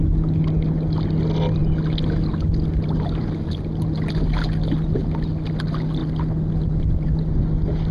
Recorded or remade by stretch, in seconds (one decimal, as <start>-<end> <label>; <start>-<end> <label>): 0.0-7.9 recorded